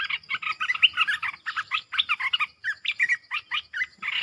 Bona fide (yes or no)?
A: yes